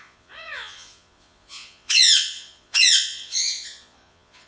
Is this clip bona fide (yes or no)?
no